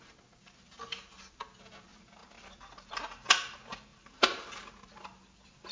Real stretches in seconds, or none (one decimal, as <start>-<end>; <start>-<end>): 0.0-3.9; 4.9-5.7